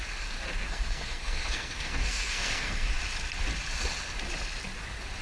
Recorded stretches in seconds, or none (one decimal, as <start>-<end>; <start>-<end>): 0.0-0.6; 3.0-5.2

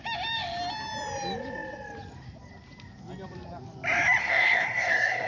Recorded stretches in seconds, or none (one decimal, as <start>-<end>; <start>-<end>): 0.0-4.2